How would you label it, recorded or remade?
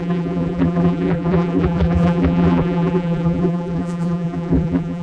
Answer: remade